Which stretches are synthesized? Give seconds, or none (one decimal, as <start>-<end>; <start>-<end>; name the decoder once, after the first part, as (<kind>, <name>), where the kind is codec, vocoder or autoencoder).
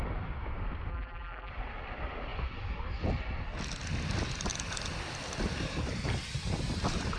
0.9-1.5 (vocoder, BigVGAN v2)